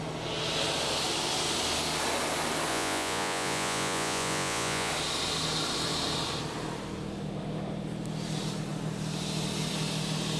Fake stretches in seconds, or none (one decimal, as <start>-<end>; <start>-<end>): 2.7-4.9